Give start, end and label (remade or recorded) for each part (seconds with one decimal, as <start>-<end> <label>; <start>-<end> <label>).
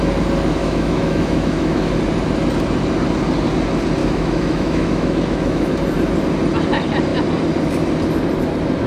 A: 0.0-0.6 recorded; 0.6-1.9 remade; 1.9-4.0 recorded; 4.0-5.7 remade; 5.7-8.9 recorded